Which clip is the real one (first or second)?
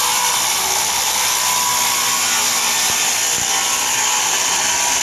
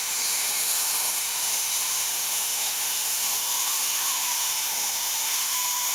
first